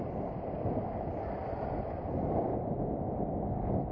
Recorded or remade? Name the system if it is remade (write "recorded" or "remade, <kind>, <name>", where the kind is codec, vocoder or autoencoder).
recorded